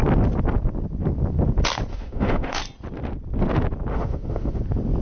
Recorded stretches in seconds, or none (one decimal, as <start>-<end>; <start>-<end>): 0.0-1.9; 2.6-3.9; 4.6-5.0